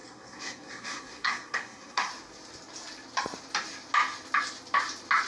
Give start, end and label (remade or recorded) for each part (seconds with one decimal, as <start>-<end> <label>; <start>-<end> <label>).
0.0-2.1 remade; 2.1-5.3 recorded